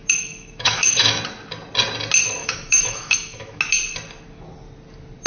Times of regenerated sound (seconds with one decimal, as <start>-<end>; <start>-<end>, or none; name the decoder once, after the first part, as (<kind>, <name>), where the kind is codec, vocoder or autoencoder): 0.0-1.2 (autoencoder, DAC-VAE); 2.4-3.6